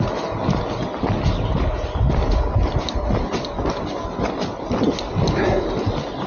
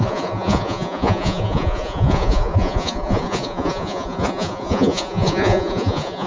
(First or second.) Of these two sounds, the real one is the first